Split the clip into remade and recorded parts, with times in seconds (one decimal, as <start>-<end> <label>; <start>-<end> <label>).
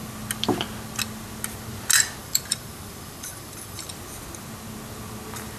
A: 0.0-2.2 recorded; 2.2-3.9 remade; 3.9-5.6 recorded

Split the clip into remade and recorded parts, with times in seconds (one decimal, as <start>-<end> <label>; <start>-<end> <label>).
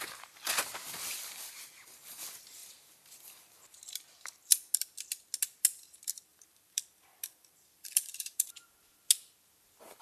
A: 0.0-2.6 recorded; 2.6-3.5 remade; 3.5-6.3 recorded; 6.3-8.5 remade; 8.5-10.0 recorded